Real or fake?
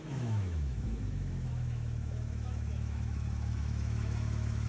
fake